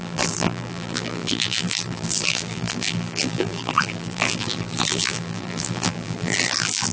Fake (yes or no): yes